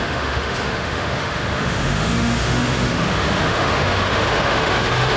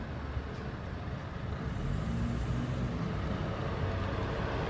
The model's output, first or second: first